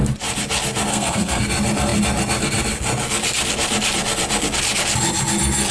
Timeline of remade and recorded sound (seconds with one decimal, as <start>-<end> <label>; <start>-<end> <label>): 0.0-0.9 recorded; 0.9-1.4 remade; 1.4-5.7 recorded